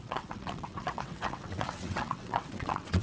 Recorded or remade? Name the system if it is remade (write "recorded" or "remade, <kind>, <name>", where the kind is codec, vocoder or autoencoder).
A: remade, vocoder, WaveNeXt